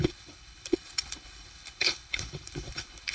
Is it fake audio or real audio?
fake